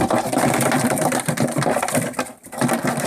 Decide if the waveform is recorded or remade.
remade